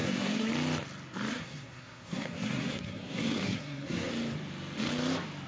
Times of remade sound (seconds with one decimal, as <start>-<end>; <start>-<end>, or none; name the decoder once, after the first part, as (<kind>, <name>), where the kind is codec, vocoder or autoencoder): 0.0-0.5 (codec, SNAC); 1.3-4.1